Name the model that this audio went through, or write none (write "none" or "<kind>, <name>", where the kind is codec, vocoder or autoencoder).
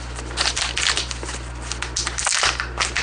none